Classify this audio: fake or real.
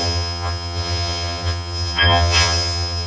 fake